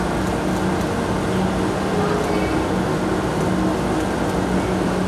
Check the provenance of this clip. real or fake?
real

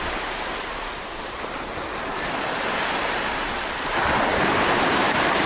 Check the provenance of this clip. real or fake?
fake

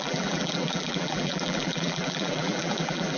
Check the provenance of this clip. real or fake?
fake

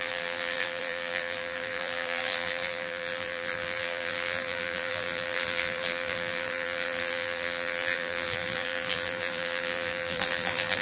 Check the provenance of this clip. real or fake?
fake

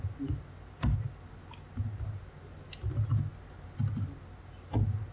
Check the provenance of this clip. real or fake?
real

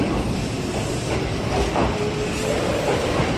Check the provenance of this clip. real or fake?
real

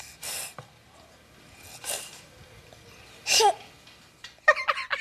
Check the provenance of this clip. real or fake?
real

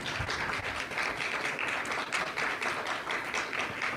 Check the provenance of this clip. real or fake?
real